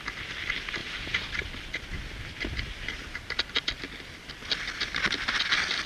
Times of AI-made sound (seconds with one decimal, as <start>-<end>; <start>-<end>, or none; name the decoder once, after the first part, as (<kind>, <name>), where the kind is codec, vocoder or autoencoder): none